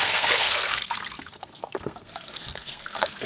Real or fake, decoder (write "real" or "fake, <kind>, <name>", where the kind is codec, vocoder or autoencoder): fake, codec, SNAC